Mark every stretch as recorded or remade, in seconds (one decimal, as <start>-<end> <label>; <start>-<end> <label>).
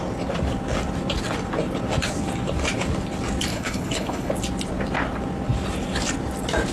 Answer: 0.0-3.5 recorded; 3.5-4.3 remade; 4.3-6.7 recorded